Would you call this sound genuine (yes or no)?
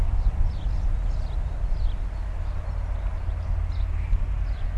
yes